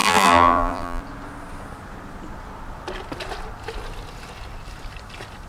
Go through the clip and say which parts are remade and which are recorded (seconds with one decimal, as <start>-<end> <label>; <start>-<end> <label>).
0.0-1.0 remade; 1.0-5.5 recorded